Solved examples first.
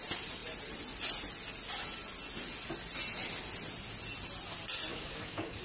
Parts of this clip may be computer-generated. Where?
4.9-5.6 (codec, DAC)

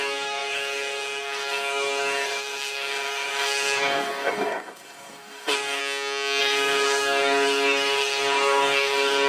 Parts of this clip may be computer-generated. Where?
0.0-5.8 (codec, DAC); 6.4-9.3

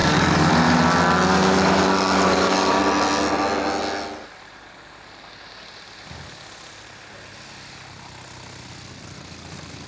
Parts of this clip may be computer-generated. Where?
0.0-0.5 (codec, DAC); 1.3-2.8

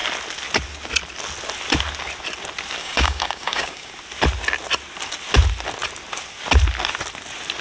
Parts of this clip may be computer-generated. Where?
2.8-3.9 (codec, DAC)

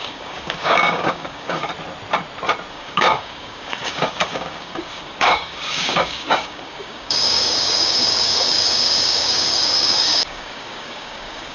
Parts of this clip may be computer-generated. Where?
0.0-1.7 (codec, DAC); 2.7-11.5

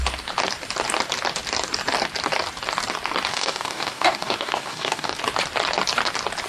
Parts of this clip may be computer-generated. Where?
3.3-5.1 (codec, DAC)

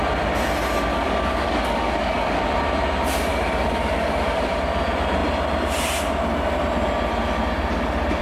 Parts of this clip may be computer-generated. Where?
0.9-2.4 (codec, DAC); 3.3-4.6